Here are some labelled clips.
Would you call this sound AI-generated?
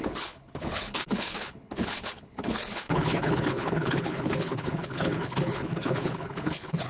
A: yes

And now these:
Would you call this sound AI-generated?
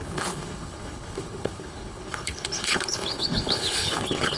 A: yes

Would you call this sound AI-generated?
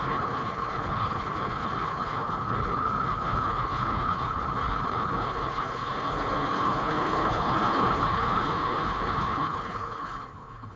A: yes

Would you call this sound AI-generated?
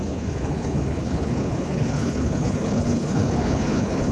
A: yes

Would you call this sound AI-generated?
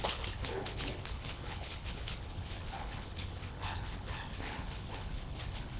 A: yes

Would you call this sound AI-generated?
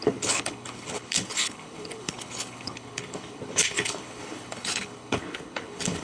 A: yes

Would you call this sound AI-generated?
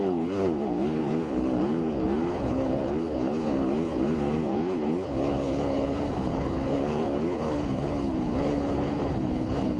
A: yes